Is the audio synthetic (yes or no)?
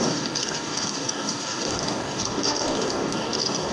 yes